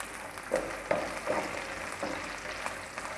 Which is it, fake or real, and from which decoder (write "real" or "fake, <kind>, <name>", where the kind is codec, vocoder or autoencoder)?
real